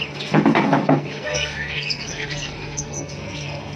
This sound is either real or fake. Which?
fake